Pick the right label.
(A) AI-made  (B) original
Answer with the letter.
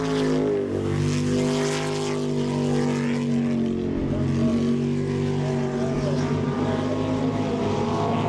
B